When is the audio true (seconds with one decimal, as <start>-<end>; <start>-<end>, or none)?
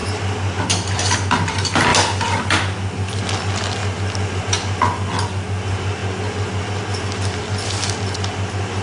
0.0-8.8